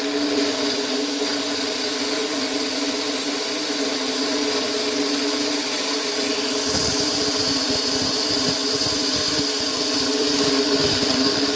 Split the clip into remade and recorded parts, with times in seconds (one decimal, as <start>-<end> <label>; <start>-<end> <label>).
0.0-2.2 remade; 2.2-6.1 recorded; 6.1-8.6 remade; 8.6-9.6 recorded; 9.6-11.6 remade